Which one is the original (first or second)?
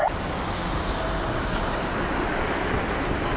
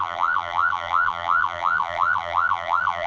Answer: first